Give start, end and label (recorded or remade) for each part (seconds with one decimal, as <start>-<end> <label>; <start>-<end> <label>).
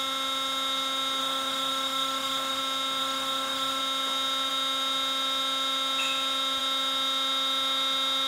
0.0-1.2 recorded; 1.2-2.6 remade; 2.6-3.0 recorded; 3.0-3.8 remade; 3.8-8.3 recorded